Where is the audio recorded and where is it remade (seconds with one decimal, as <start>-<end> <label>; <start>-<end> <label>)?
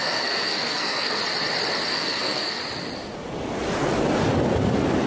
0.0-1.2 remade; 1.2-1.9 recorded; 1.9-2.6 remade; 2.6-5.1 recorded